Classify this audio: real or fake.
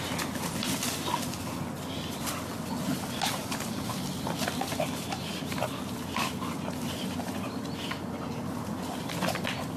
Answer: real